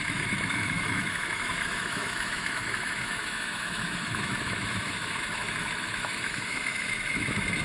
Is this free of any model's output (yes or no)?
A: no